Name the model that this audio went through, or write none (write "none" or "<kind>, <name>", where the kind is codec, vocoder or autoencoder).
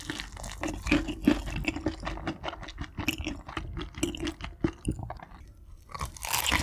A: none